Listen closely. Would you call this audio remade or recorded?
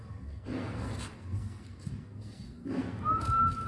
remade